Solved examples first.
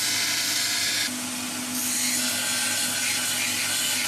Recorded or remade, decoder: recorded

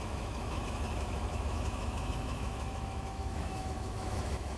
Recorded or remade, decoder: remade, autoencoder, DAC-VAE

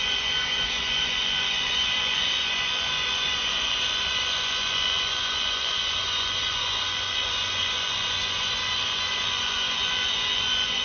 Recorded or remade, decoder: remade, vocoder, Vocos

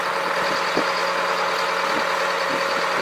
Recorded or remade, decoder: recorded